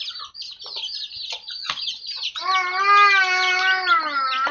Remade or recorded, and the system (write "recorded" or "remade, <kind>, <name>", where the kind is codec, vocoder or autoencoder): recorded